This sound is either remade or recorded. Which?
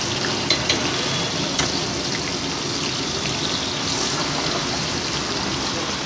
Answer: recorded